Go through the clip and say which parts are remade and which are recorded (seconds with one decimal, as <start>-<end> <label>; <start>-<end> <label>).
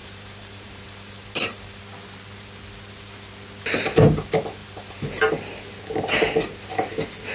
0.0-1.8 remade; 1.8-4.6 recorded; 4.6-5.2 remade; 5.2-7.3 recorded